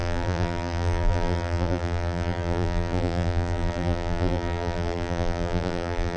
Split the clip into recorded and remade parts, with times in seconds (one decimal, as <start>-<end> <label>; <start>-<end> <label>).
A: 0.0-6.2 remade